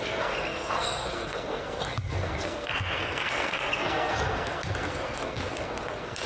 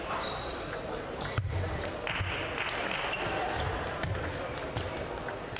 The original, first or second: second